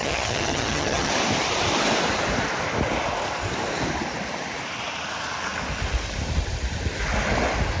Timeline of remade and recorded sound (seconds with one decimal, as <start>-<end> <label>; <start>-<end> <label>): 0.0-1.1 remade; 1.1-7.8 recorded